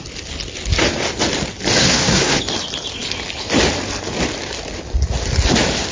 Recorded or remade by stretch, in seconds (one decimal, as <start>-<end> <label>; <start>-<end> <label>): 0.0-1.8 recorded; 1.8-2.4 remade; 2.4-5.9 recorded